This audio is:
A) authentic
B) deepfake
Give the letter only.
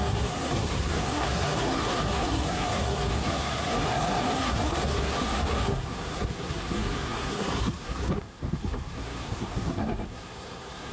B